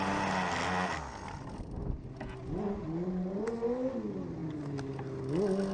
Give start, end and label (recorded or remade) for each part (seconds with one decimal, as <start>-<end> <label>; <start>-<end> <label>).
0.0-5.7 recorded